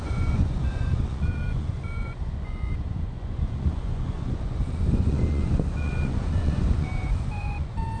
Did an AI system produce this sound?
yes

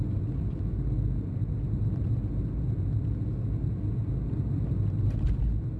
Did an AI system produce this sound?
no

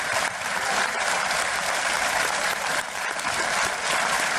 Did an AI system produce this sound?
yes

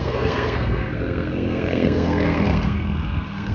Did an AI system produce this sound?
yes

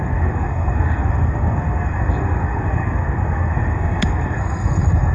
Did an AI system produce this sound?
yes